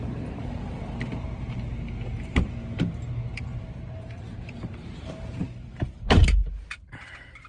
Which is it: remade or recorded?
remade